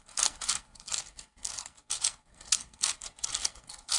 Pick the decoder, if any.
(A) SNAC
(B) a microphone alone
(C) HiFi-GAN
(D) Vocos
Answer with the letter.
A